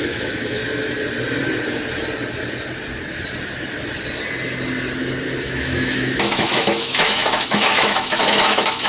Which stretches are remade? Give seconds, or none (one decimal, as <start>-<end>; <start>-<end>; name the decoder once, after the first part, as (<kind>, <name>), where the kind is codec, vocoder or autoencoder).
0.0-0.6 (autoencoder, DAC-VAE); 5.4-8.9